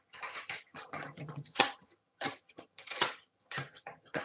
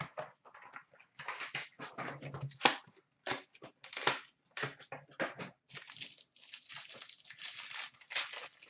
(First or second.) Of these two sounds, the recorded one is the second